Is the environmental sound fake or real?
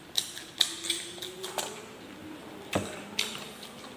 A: real